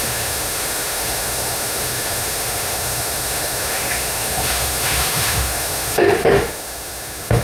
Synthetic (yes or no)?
yes